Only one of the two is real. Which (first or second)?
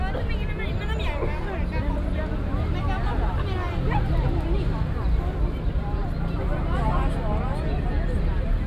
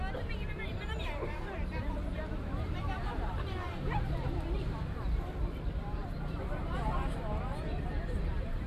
first